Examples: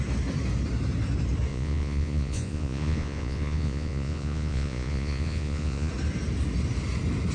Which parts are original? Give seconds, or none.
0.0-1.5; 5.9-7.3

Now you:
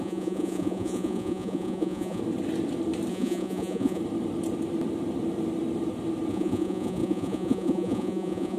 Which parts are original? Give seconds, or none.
2.2-3.1; 4.0-6.3